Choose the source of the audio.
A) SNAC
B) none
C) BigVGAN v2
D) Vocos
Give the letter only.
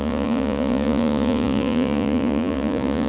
D